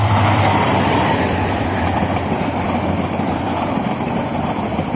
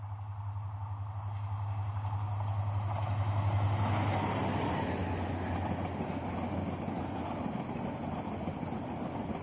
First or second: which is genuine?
second